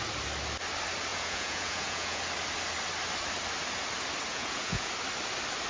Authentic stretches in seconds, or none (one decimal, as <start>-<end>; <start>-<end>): 0.0-1.1; 2.2-4.3; 4.9-5.7